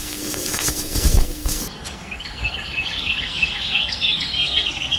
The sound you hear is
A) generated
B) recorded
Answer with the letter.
A